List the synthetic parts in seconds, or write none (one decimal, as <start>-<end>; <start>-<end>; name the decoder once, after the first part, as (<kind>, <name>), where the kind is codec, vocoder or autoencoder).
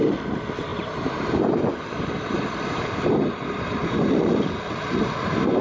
0.7-4.1 (vocoder, BigVGAN v2)